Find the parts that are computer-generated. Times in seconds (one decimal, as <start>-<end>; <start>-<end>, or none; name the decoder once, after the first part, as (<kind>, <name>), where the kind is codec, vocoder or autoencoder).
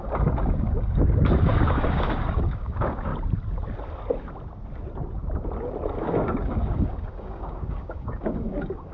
0.0-3.1 (codec, DAC); 5.9-8.9